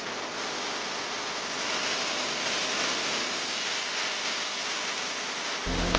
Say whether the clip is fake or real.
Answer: real